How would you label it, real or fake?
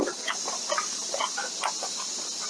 real